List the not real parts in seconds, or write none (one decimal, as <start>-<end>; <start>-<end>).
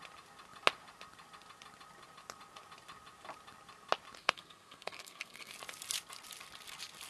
4.2-5.5